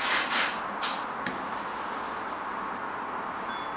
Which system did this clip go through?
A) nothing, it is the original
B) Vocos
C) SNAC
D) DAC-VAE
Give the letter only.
A